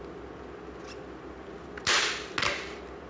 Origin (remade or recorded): recorded